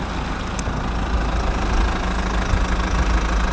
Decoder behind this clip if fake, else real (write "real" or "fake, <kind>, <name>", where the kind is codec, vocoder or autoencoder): real